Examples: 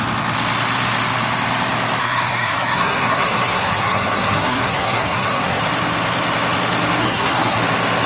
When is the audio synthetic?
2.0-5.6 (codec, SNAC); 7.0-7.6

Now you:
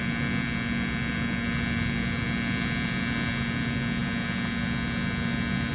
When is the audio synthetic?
none

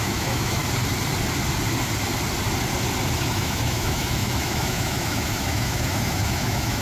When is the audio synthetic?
0.0-0.6 (autoencoder, DAC-VAE); 3.2-6.8

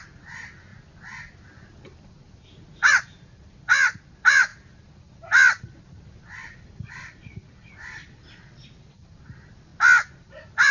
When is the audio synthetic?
0.0-0.7 (vocoder, BigVGAN v2); 2.9-9.7; 10.2-10.7